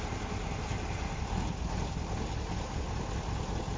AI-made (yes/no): no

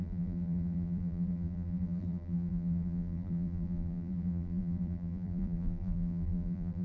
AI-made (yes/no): yes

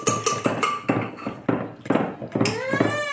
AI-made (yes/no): no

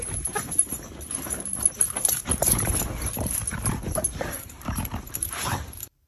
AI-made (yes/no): yes